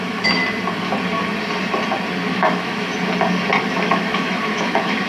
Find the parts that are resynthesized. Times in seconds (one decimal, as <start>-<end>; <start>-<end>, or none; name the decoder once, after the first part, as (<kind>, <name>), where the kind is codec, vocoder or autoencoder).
0.0-0.4 (autoencoder, DAC-VAE); 2.3-2.9; 3.7-5.1